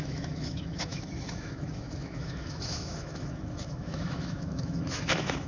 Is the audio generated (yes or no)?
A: yes